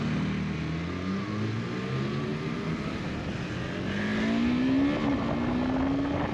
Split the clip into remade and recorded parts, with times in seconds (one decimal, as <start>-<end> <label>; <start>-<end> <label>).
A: 0.0-6.3 recorded